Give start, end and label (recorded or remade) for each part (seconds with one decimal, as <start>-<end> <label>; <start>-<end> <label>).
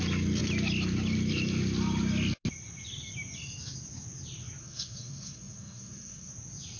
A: 0.0-4.6 recorded; 4.6-6.3 remade; 6.3-6.8 recorded